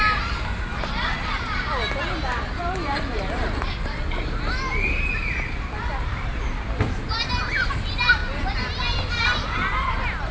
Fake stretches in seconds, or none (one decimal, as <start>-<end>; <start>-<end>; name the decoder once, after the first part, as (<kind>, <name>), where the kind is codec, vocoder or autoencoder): none